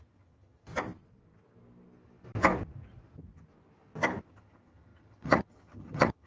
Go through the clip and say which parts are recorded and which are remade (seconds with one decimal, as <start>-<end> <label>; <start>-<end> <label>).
0.0-0.7 remade; 0.7-4.3 recorded; 4.3-6.3 remade

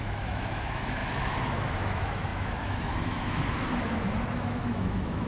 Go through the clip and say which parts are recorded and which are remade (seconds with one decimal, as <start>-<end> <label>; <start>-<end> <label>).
0.0-5.3 remade

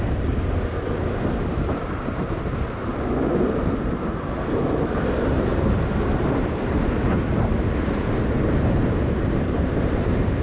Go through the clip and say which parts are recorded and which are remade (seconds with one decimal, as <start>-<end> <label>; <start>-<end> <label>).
0.0-2.9 remade; 2.9-3.8 recorded; 3.8-5.5 remade; 5.5-6.4 recorded; 6.4-10.4 remade